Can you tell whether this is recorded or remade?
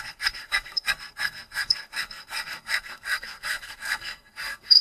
remade